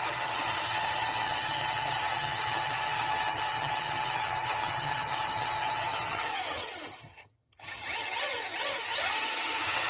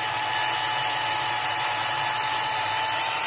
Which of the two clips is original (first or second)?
second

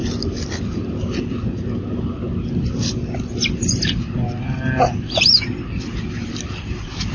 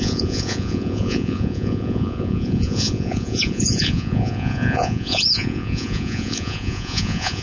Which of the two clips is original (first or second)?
first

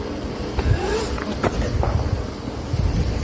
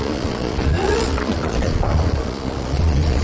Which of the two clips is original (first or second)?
first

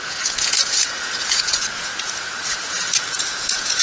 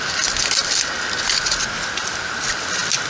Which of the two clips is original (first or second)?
second